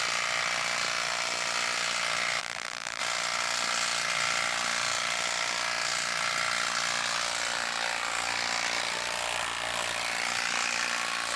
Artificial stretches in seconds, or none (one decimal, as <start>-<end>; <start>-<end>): 2.4-3.0